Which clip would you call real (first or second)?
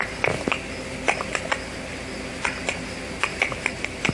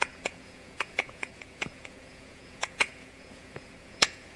first